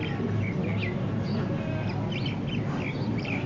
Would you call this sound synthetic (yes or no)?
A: no